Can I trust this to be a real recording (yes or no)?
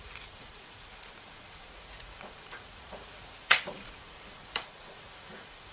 no